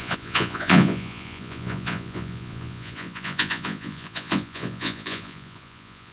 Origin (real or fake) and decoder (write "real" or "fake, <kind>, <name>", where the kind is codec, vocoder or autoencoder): fake, vocoder, Vocos